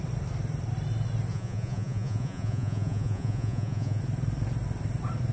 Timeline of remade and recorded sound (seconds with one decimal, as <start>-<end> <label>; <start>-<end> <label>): 0.0-1.3 recorded; 1.3-4.0 remade; 4.0-5.3 recorded